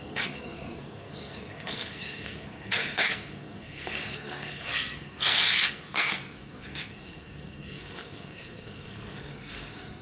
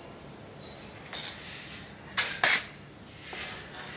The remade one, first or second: first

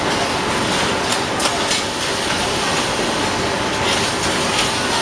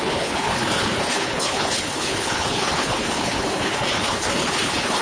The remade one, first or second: second